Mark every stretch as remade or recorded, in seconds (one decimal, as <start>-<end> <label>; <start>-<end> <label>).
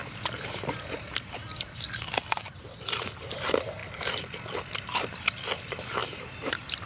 0.0-2.6 recorded; 2.6-3.8 remade; 3.8-4.7 recorded; 4.7-6.9 remade